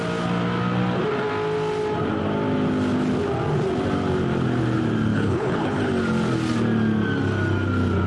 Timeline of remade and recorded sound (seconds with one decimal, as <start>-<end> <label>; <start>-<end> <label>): 0.0-5.1 recorded; 5.1-5.9 remade; 5.9-8.1 recorded